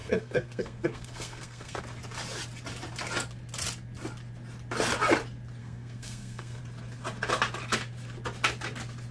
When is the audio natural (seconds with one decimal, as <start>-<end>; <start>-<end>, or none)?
1.8-5.6; 6.6-9.1